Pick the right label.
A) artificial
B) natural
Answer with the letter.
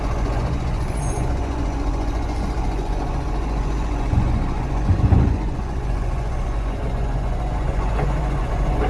A